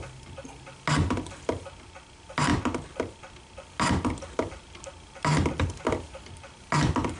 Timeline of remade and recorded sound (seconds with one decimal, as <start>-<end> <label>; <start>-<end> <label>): 0.0-7.2 recorded